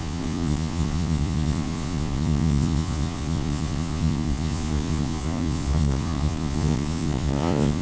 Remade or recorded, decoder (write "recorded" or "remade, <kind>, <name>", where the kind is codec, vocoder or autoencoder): remade, vocoder, Vocos